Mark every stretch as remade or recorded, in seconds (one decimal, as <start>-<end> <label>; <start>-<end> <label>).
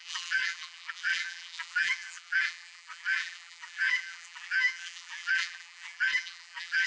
0.0-6.9 remade